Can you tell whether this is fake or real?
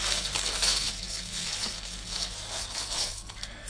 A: fake